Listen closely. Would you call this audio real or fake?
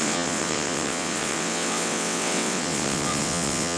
fake